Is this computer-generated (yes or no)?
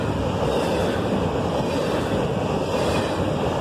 yes